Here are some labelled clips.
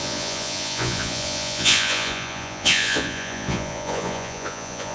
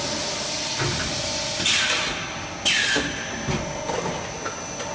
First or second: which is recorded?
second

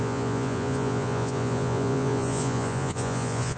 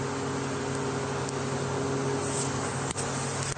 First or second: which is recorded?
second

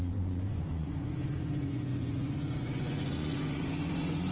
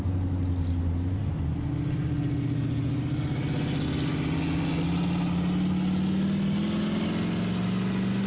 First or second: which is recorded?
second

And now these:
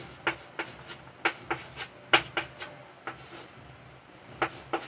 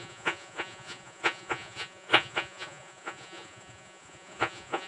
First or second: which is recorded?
first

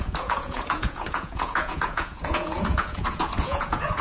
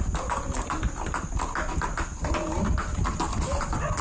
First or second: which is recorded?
second